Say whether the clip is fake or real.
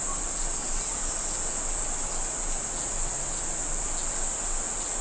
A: real